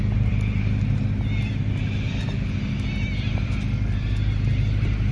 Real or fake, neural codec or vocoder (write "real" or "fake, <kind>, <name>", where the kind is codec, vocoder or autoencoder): real